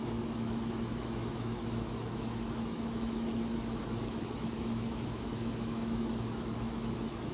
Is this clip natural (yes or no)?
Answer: no